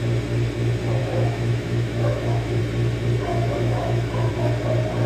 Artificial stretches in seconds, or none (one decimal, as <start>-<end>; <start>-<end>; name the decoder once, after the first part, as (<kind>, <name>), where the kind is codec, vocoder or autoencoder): 1.0-2.6 (autoencoder, DAC-VAE); 3.3-4.3